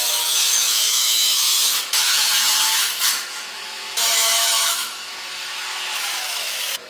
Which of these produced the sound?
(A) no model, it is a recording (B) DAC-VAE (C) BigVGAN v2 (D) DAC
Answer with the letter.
B